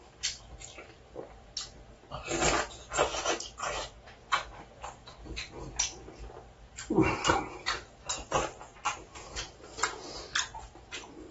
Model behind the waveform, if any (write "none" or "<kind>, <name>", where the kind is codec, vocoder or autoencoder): none